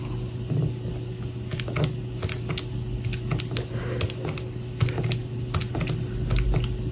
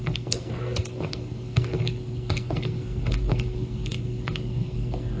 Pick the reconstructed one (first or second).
second